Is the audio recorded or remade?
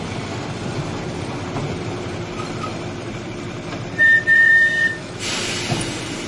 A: remade